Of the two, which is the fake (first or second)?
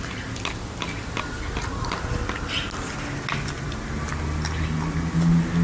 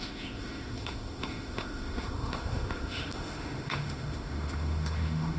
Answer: second